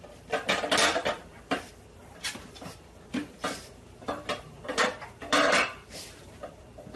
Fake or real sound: fake